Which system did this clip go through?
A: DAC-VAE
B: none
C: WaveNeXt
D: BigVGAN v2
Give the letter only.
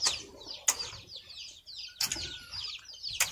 B